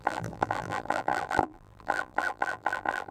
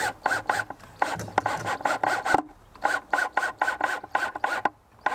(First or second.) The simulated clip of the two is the first